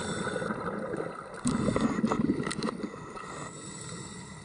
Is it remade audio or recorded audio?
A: recorded